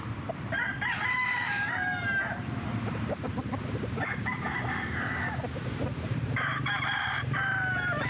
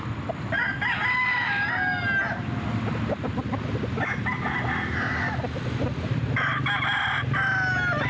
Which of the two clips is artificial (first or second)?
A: first